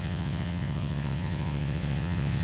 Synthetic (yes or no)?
yes